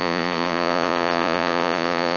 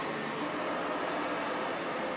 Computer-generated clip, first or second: first